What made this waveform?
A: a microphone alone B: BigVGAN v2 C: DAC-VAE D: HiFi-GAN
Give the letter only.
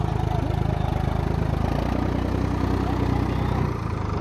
A